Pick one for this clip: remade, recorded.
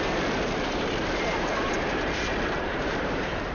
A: remade